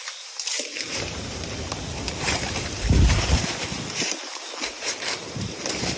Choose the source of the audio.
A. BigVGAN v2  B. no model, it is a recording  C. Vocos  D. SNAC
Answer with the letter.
A